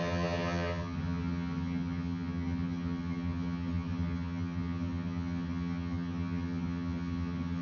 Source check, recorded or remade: remade